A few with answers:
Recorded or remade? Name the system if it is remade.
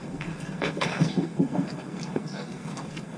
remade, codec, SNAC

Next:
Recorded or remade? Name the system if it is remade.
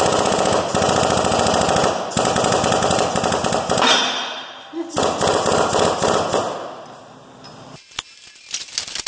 recorded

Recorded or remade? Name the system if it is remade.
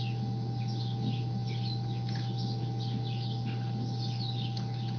recorded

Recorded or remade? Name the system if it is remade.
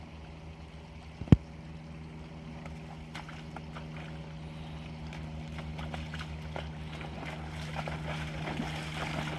recorded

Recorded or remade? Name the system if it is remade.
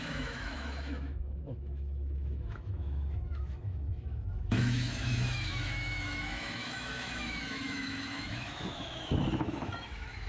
remade, autoencoder, DAC-VAE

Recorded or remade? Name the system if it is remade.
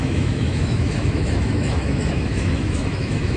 remade, autoencoder, DAC-VAE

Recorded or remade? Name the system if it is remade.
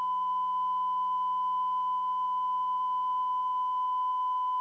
recorded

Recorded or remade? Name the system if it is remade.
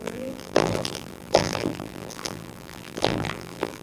remade, vocoder, BigVGAN v2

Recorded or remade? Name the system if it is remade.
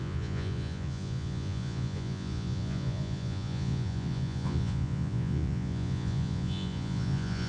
remade, vocoder, Vocos